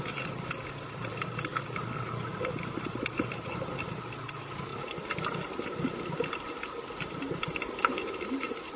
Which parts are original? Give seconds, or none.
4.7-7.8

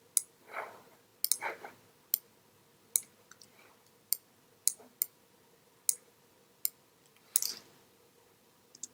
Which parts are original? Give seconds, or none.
0.0-8.9

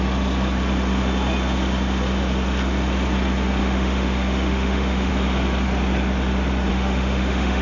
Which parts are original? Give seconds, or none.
0.0-3.6; 5.1-6.7

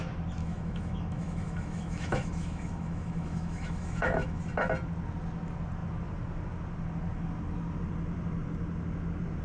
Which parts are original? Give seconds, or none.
0.0-0.4; 4.4-9.4

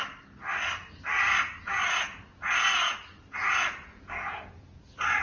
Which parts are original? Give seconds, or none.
0.0-1.7; 4.8-5.2

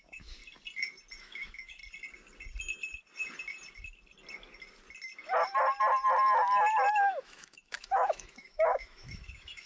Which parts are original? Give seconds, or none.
0.4-1.2; 1.8-6.9

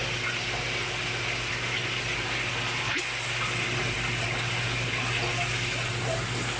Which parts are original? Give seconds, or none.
0.0-6.6

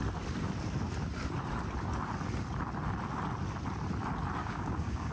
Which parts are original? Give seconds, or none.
0.0-4.4